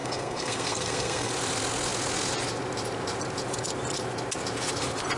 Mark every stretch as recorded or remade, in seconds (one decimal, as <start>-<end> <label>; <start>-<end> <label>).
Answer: 0.0-1.3 remade; 1.3-5.2 recorded